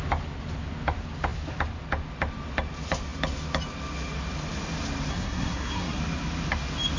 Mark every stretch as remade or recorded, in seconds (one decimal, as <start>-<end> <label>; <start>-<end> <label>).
0.0-5.1 recorded; 5.1-6.0 remade; 6.0-7.0 recorded